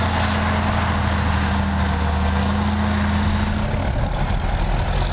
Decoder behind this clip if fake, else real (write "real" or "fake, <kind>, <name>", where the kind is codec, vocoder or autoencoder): real